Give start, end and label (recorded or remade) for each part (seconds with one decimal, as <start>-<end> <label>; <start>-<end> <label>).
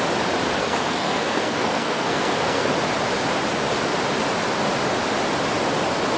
0.0-0.6 recorded; 0.6-2.7 remade; 2.7-6.2 recorded